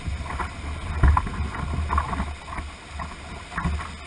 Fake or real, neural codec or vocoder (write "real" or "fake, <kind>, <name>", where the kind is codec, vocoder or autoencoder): real